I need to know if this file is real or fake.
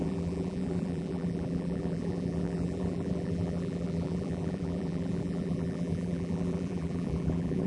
fake